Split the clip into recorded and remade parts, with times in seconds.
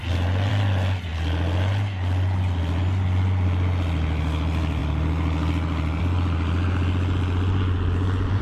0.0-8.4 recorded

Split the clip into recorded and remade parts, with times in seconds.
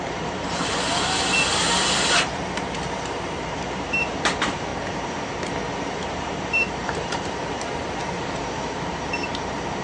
0.0-4.7 remade; 4.7-5.7 recorded; 5.7-9.8 remade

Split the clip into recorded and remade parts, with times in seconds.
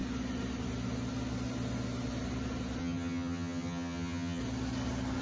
0.0-2.8 recorded; 2.8-4.4 remade; 4.4-5.2 recorded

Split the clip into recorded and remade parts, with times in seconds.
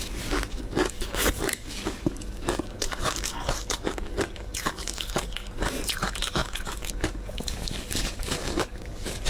0.0-9.3 remade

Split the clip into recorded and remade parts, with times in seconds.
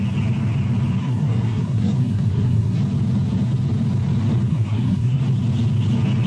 0.0-1.0 recorded; 1.0-2.8 remade; 2.8-4.5 recorded; 4.5-5.2 remade; 5.2-6.3 recorded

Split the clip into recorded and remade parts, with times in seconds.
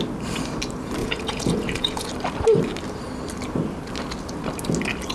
0.0-1.0 recorded; 1.0-2.1 remade; 2.1-5.1 recorded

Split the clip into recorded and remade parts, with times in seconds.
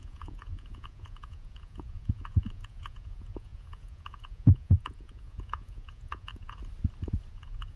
0.0-6.6 remade; 6.6-7.3 recorded; 7.3-7.8 remade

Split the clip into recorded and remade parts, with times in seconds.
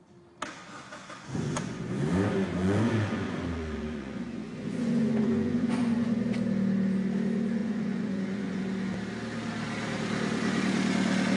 0.0-1.0 recorded; 1.0-2.0 remade; 2.0-2.6 recorded; 2.6-6.2 remade; 6.2-7.6 recorded; 7.6-8.6 remade; 8.6-11.4 recorded